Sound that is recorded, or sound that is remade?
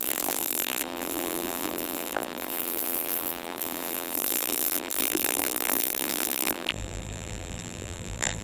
remade